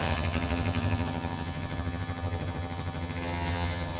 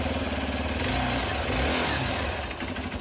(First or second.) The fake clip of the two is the first